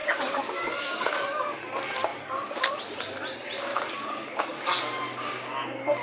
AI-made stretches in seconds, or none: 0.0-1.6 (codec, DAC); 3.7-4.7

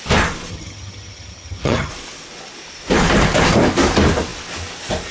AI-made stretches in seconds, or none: 0.5-1.9 (vocoder, HiFi-GAN)